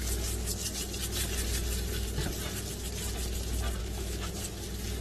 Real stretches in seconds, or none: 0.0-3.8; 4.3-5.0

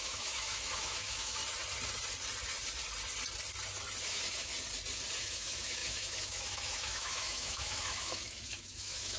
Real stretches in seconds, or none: 1.4-4.0; 4.5-5.2